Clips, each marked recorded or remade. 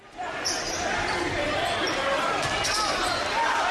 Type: remade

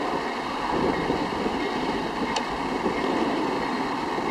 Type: remade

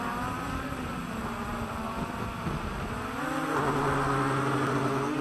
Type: recorded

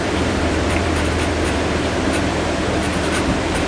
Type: remade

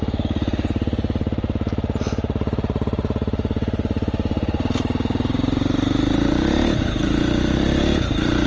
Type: remade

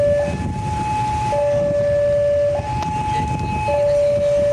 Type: recorded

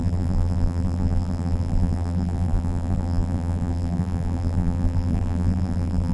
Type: remade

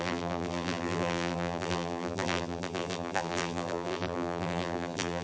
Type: remade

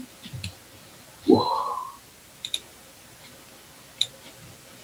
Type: recorded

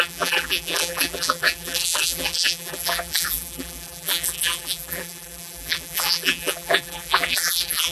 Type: remade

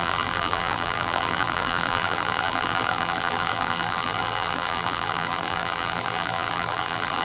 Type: remade